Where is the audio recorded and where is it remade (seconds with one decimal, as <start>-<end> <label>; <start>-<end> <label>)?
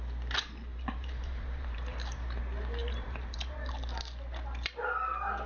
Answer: 0.0-0.7 recorded; 0.7-2.4 remade; 2.4-2.8 recorded; 2.8-3.7 remade; 3.7-5.5 recorded